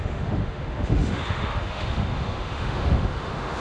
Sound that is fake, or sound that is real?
fake